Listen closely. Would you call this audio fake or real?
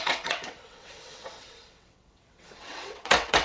fake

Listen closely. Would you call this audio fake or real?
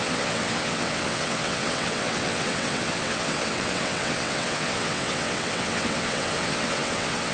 fake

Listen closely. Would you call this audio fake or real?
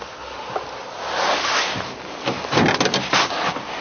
real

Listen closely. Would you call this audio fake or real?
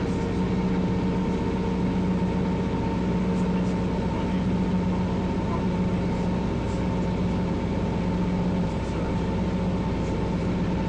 real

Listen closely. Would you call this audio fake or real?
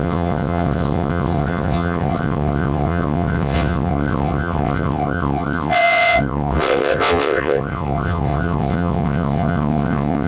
fake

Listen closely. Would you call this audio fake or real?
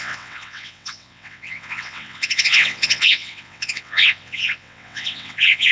fake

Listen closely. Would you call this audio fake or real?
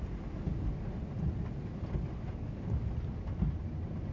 real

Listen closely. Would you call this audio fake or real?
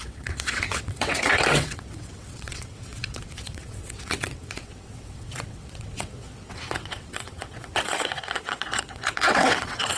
fake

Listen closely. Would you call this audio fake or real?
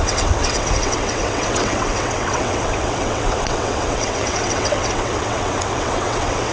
fake